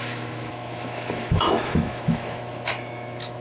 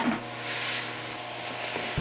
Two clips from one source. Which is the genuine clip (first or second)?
second